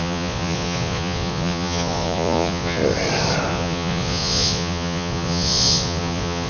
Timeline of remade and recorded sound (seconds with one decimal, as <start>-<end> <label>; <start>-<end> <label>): 0.0-2.8 remade; 2.8-3.5 recorded; 3.5-6.5 remade